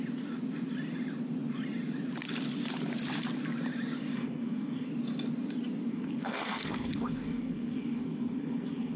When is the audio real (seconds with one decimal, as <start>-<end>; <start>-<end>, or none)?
0.0-4.1; 4.9-5.9